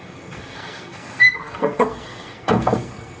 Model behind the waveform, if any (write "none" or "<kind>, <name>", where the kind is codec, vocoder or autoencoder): codec, SNAC